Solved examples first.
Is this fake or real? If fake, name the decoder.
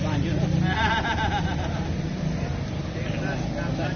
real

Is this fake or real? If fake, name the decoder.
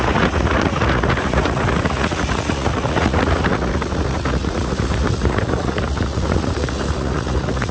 fake, vocoder, Vocos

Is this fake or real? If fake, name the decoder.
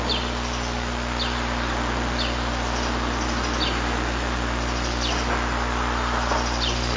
real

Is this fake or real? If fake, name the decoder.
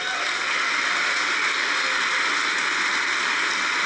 real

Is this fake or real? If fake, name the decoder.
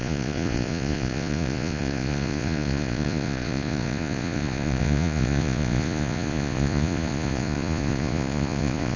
fake, vocoder, Vocos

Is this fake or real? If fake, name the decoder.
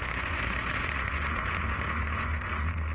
fake, vocoder, Vocos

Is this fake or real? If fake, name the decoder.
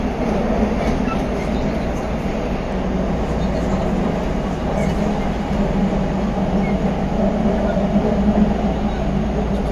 real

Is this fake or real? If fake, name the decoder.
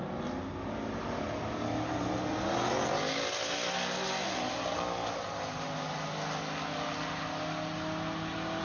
real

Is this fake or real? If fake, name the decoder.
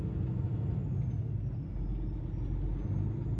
real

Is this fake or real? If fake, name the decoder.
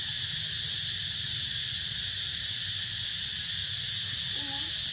real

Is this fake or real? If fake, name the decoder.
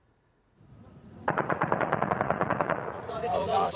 fake, vocoder, Vocos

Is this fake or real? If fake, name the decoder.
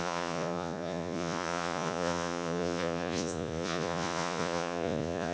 fake, vocoder, Vocos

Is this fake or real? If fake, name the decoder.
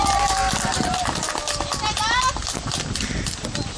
real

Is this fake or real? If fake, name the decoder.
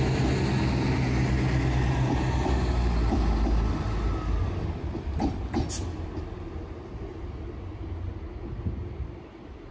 real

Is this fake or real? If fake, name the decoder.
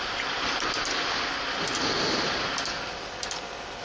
real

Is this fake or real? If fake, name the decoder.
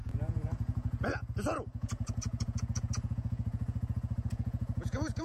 fake, vocoder, Vocos